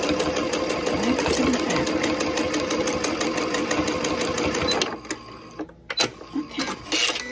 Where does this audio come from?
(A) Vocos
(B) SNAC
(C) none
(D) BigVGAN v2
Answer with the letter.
C